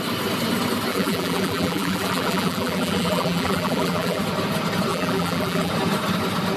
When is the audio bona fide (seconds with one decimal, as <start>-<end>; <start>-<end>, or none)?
0.0-0.9; 4.2-4.9; 5.7-6.6